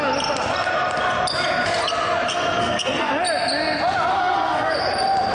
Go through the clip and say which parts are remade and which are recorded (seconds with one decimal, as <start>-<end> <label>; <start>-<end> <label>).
0.0-2.3 recorded; 2.3-3.1 remade; 3.1-4.1 recorded; 4.1-4.8 remade; 4.8-5.3 recorded